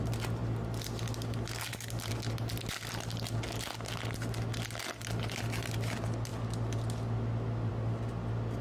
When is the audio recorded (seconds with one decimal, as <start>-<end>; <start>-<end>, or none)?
0.0-8.6